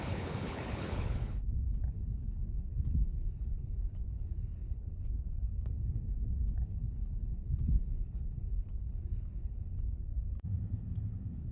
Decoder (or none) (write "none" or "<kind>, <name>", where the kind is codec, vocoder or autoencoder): codec, HILCodec